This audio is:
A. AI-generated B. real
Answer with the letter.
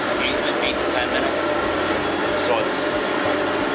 B